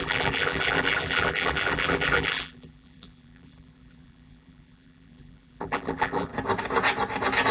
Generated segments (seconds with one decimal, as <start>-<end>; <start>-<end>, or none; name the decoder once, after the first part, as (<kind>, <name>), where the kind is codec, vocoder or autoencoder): 0.0-6.3 (vocoder, BigVGAN v2)